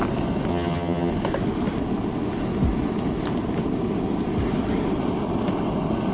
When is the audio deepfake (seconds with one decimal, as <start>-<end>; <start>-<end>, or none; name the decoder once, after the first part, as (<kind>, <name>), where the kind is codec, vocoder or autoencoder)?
0.5-1.1 (vocoder, HiFi-GAN)